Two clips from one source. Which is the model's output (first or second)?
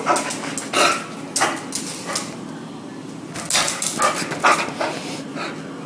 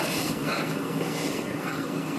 second